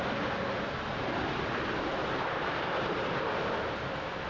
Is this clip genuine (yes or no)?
yes